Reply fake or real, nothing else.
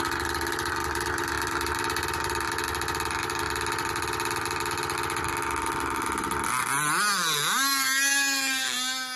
real